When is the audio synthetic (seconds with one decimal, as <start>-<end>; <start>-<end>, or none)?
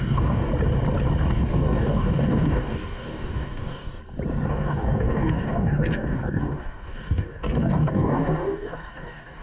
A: 0.0-0.5; 1.3-3.9; 4.5-9.4